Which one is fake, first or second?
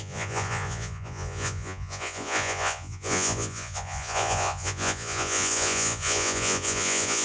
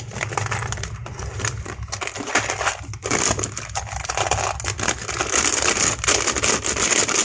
first